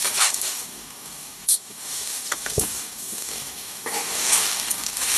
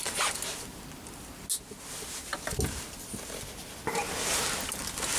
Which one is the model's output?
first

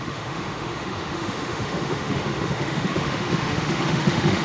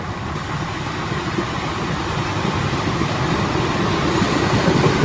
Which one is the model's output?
first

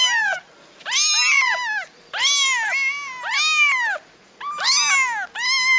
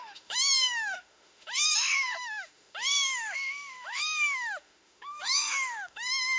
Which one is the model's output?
second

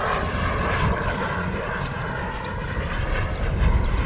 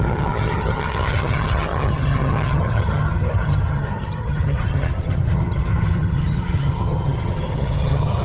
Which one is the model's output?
second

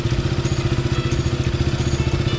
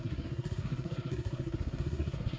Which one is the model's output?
second